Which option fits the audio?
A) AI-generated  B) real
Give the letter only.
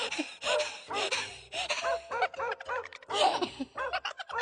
B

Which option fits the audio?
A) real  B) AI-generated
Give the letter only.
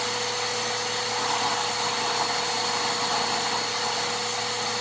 A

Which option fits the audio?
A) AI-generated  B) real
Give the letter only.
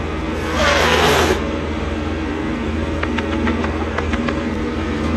A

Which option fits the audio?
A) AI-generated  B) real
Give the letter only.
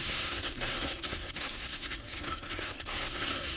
A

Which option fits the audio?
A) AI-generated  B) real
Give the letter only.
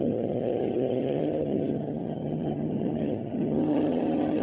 A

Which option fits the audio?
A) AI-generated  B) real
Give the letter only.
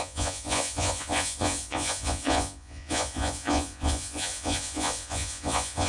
A